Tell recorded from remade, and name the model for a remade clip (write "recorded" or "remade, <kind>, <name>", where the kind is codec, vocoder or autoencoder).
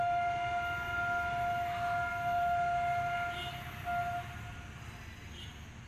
recorded